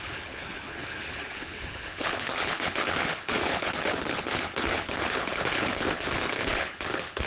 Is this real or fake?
fake